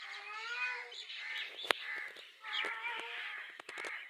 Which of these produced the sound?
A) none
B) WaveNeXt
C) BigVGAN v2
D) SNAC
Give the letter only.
A